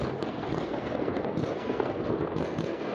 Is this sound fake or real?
fake